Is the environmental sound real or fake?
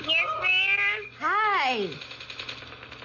real